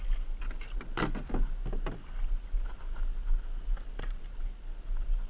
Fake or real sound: real